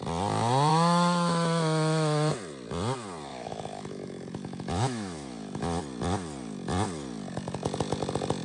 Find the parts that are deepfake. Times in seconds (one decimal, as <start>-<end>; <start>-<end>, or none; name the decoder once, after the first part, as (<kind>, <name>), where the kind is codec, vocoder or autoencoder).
0.7-2.3 (autoencoder, DAC-VAE); 3.3-5.8